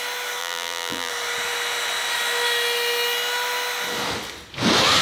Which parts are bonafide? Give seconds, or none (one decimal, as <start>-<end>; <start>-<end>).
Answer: 0.0-0.4; 1.1-5.0